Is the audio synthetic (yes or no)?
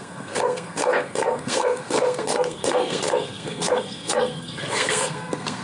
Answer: yes